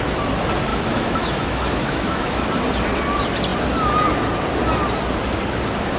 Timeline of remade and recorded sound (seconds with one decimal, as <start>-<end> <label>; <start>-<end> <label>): 0.0-0.7 recorded; 0.7-2.4 remade; 2.4-6.0 recorded